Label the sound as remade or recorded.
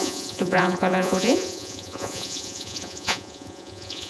remade